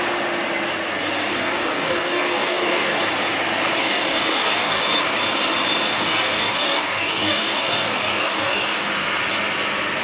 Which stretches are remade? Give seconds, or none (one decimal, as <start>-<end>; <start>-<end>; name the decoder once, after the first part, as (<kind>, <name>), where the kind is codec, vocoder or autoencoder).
1.3-3.0 (codec, DAC); 3.8-4.8; 5.9-8.9